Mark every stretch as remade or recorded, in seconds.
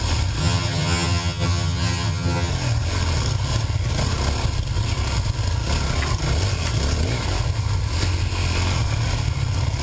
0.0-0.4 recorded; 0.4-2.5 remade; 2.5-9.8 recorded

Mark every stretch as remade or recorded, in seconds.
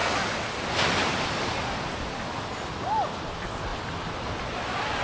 0.0-5.0 recorded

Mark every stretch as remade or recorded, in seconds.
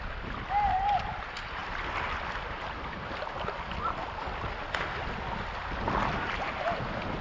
0.0-7.2 recorded